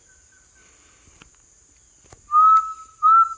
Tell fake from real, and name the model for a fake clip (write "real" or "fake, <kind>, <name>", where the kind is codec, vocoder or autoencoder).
real